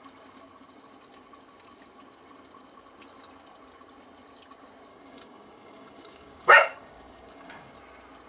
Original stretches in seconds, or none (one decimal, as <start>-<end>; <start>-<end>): 0.0-4.9; 7.8-8.3